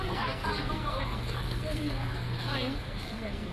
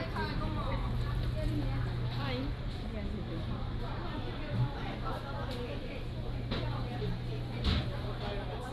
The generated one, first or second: first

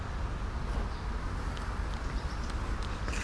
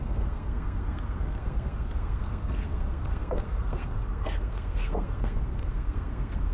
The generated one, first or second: second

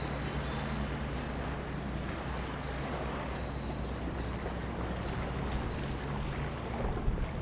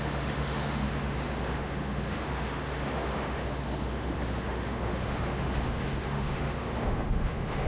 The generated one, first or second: second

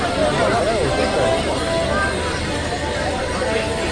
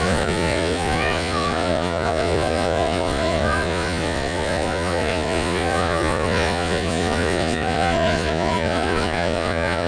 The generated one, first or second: second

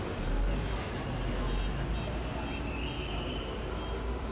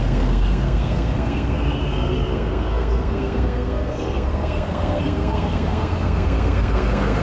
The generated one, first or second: second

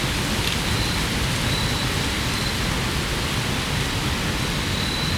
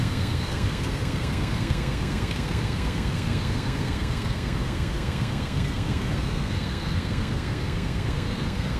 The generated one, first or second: second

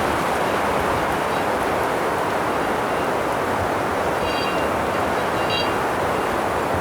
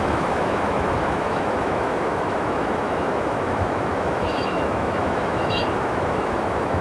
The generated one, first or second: second